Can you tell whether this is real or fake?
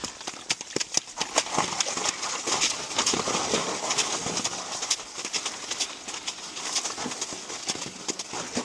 real